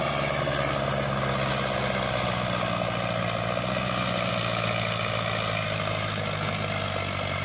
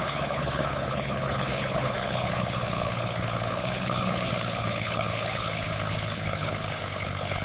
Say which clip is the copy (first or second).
second